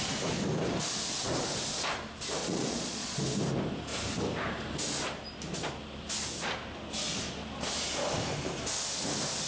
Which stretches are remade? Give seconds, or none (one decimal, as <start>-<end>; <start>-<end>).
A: 2.4-3.2